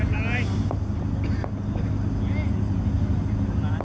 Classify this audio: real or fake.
real